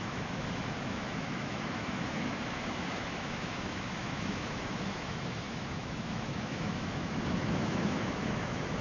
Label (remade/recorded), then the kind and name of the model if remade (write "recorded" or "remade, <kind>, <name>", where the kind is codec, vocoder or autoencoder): remade, autoencoder, DAC-VAE